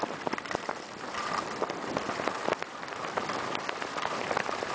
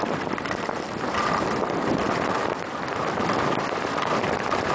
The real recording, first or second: second